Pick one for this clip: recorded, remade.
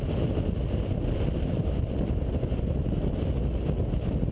recorded